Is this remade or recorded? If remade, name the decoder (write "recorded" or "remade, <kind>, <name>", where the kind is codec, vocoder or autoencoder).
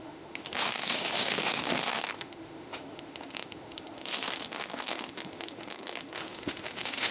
remade, autoencoder, DAC-VAE